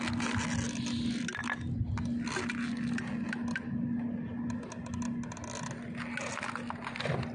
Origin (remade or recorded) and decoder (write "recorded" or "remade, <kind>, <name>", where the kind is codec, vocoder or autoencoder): recorded